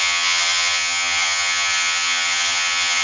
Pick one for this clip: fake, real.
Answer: fake